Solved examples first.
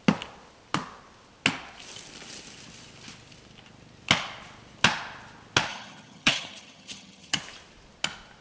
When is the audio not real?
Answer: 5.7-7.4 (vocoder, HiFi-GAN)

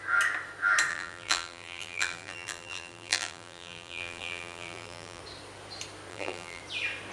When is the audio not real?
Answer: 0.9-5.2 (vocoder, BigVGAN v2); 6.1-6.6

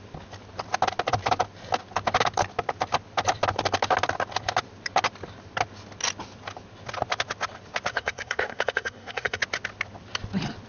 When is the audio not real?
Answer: 7.9-9.4 (codec, SNAC)

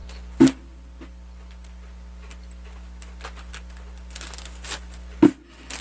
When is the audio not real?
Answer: none

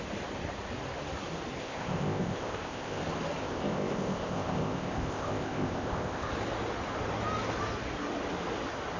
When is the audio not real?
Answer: 1.6-3.0 (codec, ZipCodec); 3.4-6.3

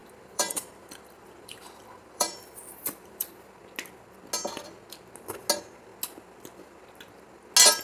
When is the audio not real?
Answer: 0.0-3.6 (vocoder, BigVGAN v2)